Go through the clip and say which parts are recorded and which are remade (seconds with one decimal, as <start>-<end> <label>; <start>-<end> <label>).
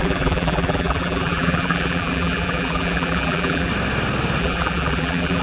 0.0-3.7 remade; 3.7-4.4 recorded; 4.4-5.4 remade